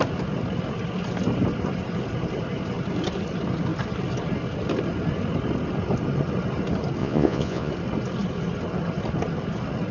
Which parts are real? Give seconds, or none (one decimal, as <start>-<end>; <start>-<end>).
0.0-7.0; 7.7-9.9